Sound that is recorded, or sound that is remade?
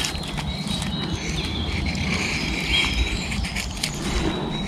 recorded